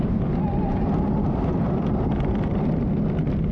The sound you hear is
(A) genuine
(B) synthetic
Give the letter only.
A